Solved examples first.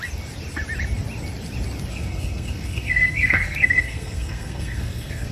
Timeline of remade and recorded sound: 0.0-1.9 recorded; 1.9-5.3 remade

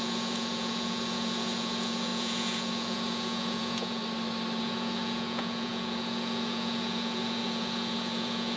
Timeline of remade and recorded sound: 0.0-4.0 remade; 4.0-4.6 recorded; 4.6-8.6 remade

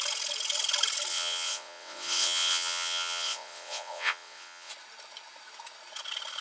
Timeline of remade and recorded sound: 0.0-1.1 recorded; 1.1-4.7 remade; 4.7-6.4 recorded

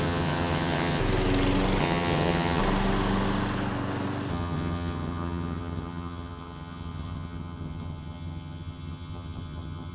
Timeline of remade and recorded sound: 0.0-1.0 remade; 1.0-1.8 recorded; 1.8-2.6 remade; 2.6-4.3 recorded; 4.3-9.9 remade